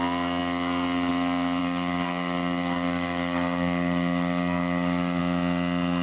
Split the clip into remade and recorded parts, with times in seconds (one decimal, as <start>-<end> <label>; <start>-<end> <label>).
0.0-1.6 recorded; 1.6-5.2 remade; 5.2-6.0 recorded